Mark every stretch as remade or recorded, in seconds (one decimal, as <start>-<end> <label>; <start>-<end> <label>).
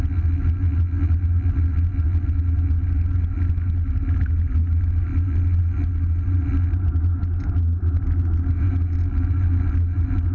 0.0-10.3 recorded